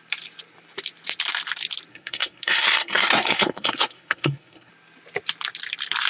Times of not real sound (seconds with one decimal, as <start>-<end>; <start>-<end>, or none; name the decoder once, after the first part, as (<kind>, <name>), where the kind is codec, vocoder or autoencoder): 1.9-4.7 (codec, SNAC)